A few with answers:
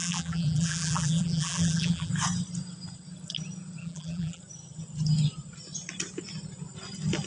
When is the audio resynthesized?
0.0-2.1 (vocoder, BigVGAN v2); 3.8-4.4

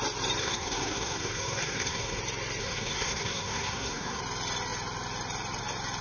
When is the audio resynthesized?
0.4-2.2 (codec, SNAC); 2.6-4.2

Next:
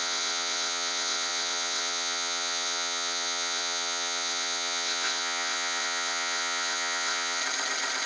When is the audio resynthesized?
0.0-7.4 (vocoder, WaveNeXt)

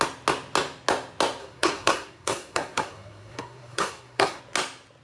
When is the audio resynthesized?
1.4-4.4 (codec, SNAC)

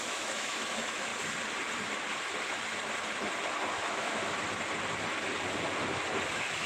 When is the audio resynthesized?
0.0-1.1 (autoencoder, DAC-VAE); 3.7-4.2; 6.3-6.7

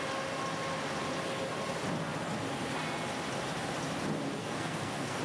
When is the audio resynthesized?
4.4-5.2 (codec, SNAC)